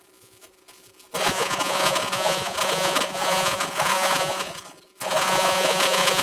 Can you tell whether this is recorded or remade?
remade